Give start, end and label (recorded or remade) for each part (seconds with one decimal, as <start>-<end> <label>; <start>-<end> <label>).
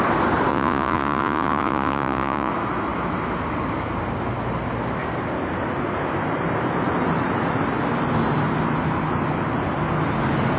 0.0-0.5 recorded; 0.5-2.5 remade; 2.5-10.6 recorded